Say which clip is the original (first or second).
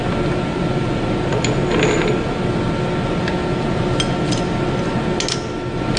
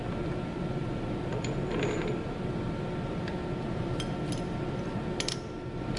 first